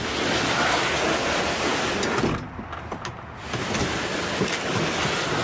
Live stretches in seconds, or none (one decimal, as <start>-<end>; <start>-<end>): 0.0-5.4

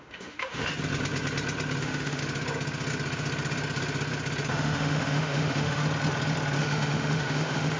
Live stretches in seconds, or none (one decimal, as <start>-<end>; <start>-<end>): 0.7-1.8; 2.2-4.5; 5.8-6.6

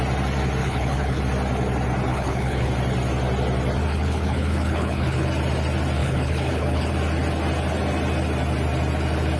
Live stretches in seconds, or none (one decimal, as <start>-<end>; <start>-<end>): 0.0-0.6; 1.2-2.1; 2.7-3.9; 5.3-6.0; 6.9-9.4

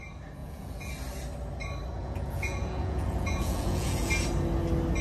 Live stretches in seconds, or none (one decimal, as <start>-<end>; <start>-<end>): 0.0-0.4; 0.9-2.0; 4.1-5.0

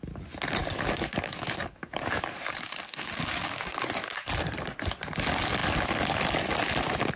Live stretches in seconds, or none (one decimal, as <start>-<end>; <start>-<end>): 0.0-0.6; 4.3-7.2

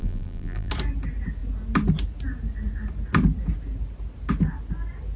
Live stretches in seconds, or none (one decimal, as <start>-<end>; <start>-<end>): 0.7-5.2